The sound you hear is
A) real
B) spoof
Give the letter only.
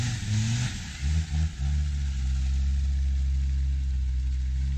A